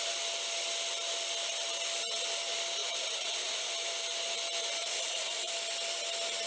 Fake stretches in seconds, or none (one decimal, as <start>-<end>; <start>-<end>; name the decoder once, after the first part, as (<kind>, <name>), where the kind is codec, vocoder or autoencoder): 2.8-3.7 (vocoder, Vocos); 4.8-5.5